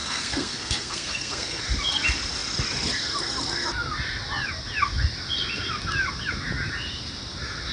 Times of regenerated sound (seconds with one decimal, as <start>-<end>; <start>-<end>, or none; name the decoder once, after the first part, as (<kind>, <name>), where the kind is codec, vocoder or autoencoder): 0.0-1.6 (codec, SNAC)